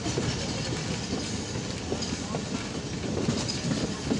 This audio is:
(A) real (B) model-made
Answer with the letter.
A